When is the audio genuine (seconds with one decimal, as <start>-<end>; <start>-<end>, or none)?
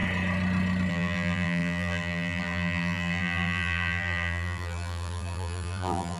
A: 0.0-0.9